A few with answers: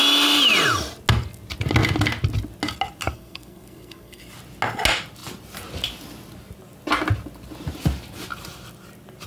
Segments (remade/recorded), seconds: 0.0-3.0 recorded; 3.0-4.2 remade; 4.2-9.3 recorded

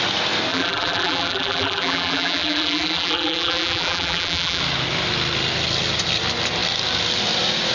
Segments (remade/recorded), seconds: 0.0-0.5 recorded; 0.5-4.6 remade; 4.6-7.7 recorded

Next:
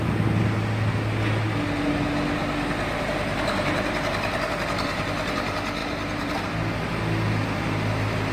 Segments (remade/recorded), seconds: 0.0-5.8 recorded; 5.8-6.4 remade; 6.4-8.3 recorded

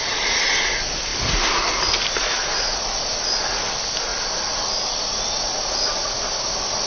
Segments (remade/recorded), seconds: 0.0-6.9 recorded